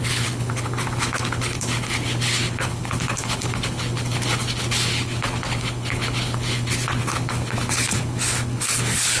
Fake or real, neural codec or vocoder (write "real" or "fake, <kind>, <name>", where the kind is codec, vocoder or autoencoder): fake, codec, HILCodec